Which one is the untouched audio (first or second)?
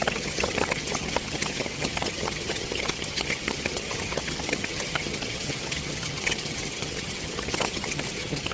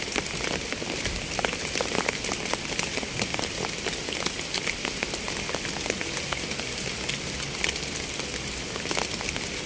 second